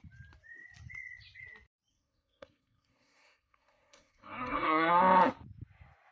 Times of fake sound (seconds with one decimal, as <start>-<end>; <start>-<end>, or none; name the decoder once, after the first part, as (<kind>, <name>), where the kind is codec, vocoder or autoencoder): 1.9-4.9 (codec, SNAC)